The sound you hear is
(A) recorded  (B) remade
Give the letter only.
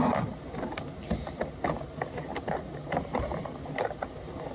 A